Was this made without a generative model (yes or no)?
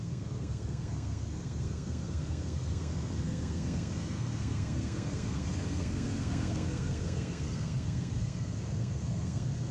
no